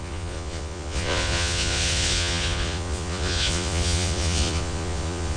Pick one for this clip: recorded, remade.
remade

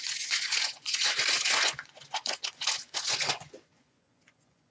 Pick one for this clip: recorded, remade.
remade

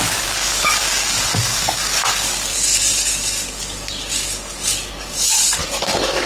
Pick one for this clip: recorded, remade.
remade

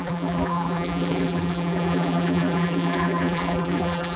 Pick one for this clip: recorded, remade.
remade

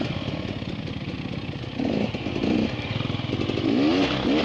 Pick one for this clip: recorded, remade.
recorded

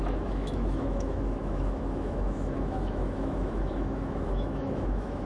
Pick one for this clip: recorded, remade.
remade